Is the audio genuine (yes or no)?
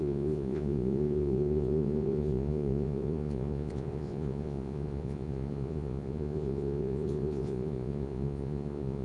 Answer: no